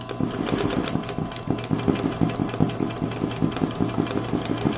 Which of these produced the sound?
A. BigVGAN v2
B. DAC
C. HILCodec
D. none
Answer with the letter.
D